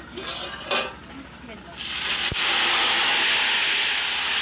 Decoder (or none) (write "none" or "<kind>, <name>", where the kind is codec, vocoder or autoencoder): none